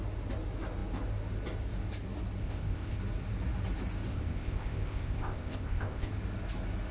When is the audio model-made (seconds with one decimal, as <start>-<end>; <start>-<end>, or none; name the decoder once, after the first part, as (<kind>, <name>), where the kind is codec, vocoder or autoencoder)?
2.4-3.0 (codec, ZipCodec); 4.1-6.1